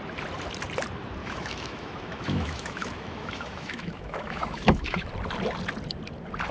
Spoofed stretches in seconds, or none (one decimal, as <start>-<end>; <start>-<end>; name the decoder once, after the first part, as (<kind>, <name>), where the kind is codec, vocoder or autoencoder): 1.2-5.1 (autoencoder, DAC-VAE)